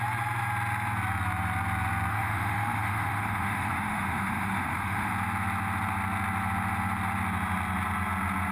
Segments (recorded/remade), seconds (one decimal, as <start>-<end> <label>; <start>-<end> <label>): 0.0-2.1 recorded; 2.1-5.1 remade; 5.1-8.5 recorded